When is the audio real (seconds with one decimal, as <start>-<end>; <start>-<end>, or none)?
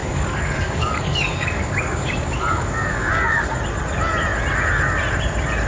3.4-5.7